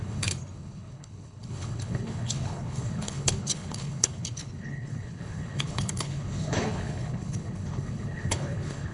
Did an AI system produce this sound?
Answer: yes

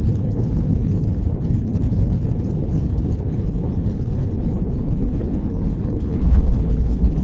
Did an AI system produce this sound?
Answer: yes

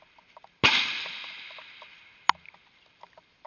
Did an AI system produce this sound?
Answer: no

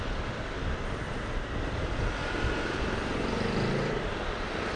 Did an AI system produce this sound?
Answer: no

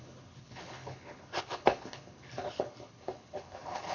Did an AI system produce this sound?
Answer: yes